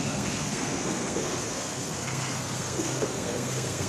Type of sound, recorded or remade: remade